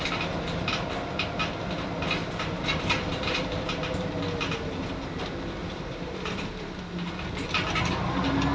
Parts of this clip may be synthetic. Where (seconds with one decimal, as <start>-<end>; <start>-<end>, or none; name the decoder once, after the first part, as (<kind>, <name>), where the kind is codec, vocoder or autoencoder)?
2.2-4.2 (vocoder, BigVGAN v2); 5.6-6.8